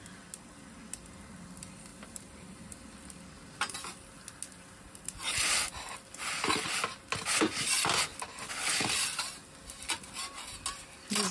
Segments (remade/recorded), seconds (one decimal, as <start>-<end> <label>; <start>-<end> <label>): 0.0-1.9 recorded; 1.9-2.6 remade; 2.6-11.3 recorded